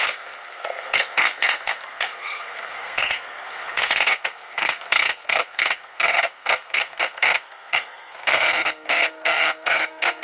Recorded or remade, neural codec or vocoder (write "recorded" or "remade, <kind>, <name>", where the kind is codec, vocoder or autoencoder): remade, codec, SNAC